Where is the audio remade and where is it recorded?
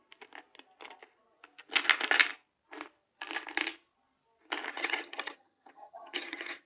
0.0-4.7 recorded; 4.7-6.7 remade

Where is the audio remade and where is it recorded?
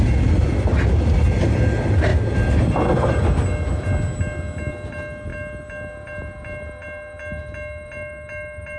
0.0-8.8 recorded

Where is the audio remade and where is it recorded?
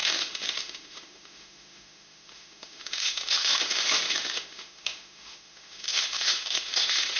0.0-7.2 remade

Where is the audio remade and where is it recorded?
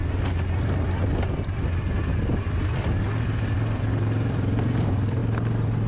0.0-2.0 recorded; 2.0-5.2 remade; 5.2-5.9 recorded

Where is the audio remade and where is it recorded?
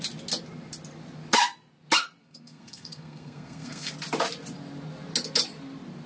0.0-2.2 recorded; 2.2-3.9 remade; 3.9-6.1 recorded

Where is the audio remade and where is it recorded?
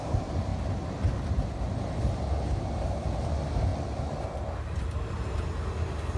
0.0-0.5 remade; 0.5-2.6 recorded; 2.6-3.7 remade; 3.7-4.8 recorded; 4.8-6.2 remade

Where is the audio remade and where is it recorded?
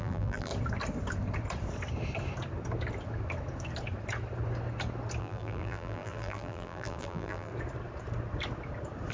0.0-0.5 remade; 0.5-5.2 recorded; 5.2-7.5 remade; 7.5-9.1 recorded